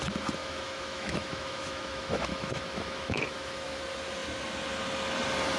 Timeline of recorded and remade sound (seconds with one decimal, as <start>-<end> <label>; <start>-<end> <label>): 0.0-0.4 recorded; 0.4-3.8 remade; 3.8-5.6 recorded